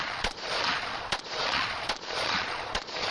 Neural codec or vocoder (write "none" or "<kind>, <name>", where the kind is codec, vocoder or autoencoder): vocoder, Vocos